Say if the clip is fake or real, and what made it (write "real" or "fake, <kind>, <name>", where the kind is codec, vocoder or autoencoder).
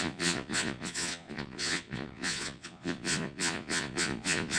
fake, vocoder, Vocos